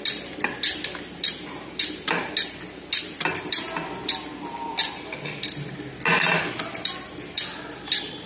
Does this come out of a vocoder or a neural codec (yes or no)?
no